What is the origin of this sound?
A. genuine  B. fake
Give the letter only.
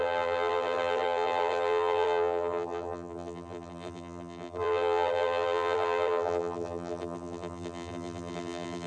B